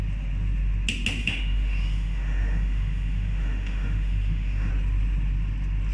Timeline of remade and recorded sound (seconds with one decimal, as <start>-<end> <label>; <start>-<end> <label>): 0.0-1.2 recorded; 1.2-4.7 remade; 4.7-5.9 recorded